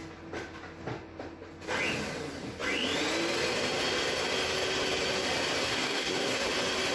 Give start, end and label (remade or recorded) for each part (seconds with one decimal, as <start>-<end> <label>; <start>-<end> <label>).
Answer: 0.0-5.6 recorded; 5.6-6.5 remade; 6.5-6.9 recorded